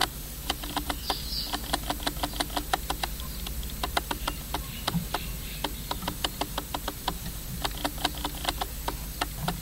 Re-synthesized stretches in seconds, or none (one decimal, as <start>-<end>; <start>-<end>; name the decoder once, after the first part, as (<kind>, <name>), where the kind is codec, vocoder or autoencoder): none